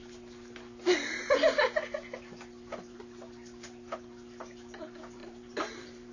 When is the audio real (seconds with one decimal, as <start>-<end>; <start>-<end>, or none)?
0.0-5.2

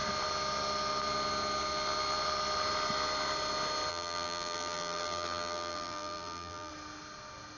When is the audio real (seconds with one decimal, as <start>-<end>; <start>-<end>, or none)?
0.0-3.9; 6.7-7.6